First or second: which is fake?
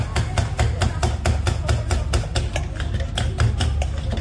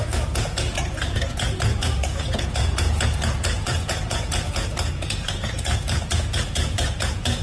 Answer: second